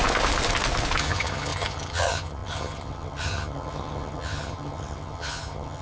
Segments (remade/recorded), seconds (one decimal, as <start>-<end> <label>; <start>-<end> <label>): 0.0-1.0 recorded; 1.0-5.8 remade